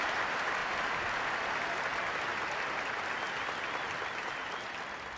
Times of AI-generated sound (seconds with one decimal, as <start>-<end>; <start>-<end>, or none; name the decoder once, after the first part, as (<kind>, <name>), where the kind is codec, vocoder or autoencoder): none